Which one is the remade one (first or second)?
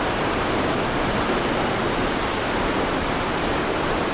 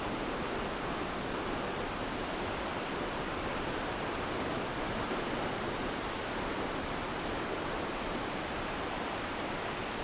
second